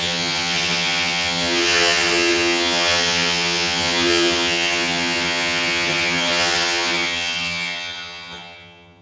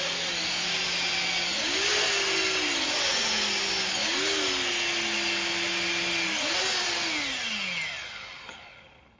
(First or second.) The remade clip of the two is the first